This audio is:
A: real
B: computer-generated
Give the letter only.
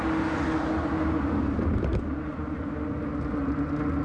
A